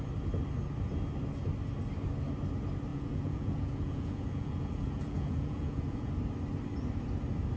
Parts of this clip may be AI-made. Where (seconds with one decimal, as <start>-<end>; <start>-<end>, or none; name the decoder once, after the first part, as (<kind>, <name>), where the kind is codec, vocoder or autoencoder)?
2.9-6.1 (vocoder, Vocos)